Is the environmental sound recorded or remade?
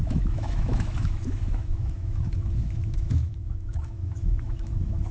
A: remade